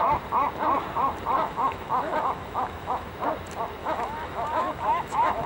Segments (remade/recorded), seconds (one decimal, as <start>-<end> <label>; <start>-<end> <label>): 0.0-1.4 recorded; 1.4-3.1 remade; 3.1-3.8 recorded; 3.8-5.5 remade